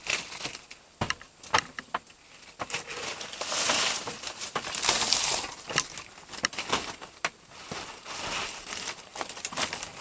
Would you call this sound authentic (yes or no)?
yes